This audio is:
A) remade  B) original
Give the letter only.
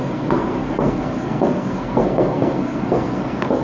A